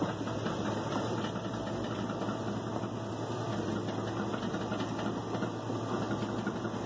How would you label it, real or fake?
real